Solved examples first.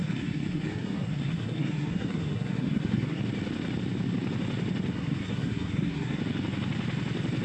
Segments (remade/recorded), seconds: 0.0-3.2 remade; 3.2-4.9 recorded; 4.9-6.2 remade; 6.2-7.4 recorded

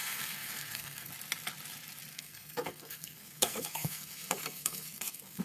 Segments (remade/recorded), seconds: 0.0-1.1 remade; 1.1-2.1 recorded; 2.1-5.4 remade